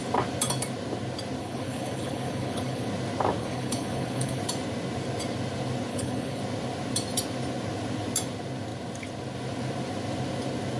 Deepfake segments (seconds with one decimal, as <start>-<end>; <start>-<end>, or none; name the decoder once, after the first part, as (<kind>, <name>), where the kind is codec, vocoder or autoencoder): 1.4-2.9 (codec, HILCodec); 3.4-4.4; 5.9-6.4